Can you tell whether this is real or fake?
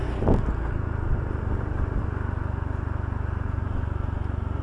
real